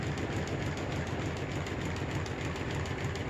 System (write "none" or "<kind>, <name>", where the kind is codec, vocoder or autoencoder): none